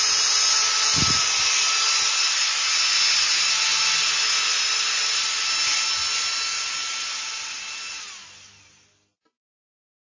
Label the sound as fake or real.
real